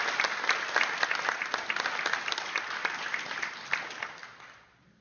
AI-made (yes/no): no